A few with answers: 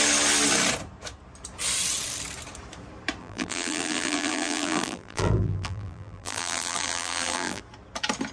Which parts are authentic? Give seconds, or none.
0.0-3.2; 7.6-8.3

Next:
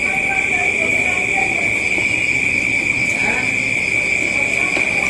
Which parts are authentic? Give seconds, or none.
2.0-5.1

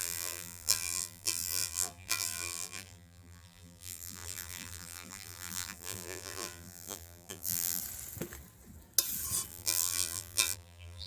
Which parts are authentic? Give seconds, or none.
7.8-9.5

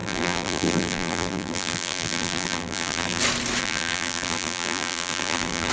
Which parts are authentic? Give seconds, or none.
3.2-3.6

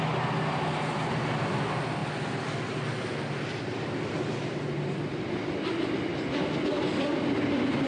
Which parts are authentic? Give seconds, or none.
0.0-7.9

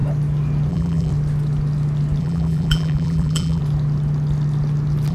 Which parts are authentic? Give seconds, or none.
0.0-0.7; 1.1-2.2; 3.6-5.1

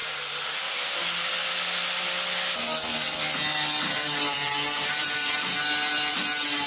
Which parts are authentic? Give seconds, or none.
0.0-3.5; 5.3-6.1

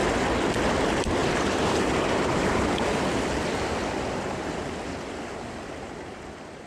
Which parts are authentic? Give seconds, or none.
0.7-1.2; 5.2-6.7